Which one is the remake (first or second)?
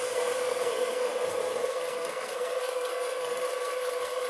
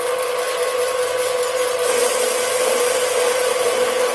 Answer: first